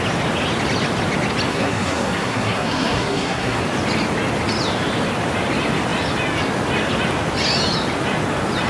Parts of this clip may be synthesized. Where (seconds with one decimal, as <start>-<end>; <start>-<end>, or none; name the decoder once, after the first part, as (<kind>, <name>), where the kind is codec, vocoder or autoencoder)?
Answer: 1.5-3.6 (codec, SNAC)